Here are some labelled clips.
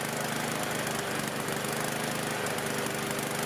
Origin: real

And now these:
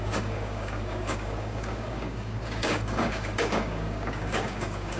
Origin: fake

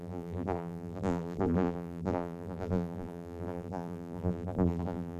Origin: fake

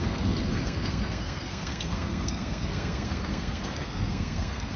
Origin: fake